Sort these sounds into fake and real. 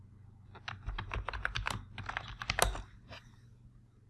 real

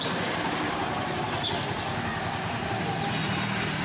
real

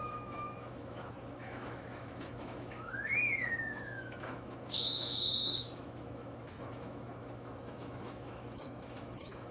fake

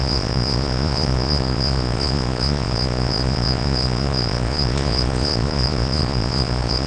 fake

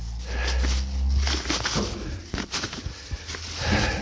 real